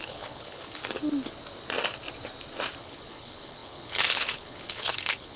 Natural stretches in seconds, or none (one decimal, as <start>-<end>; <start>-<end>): 0.8-2.8